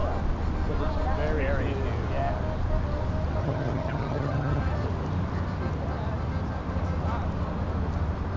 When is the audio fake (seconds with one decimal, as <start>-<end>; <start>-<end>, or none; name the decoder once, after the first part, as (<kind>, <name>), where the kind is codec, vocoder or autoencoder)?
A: 3.4-4.6 (vocoder, HiFi-GAN)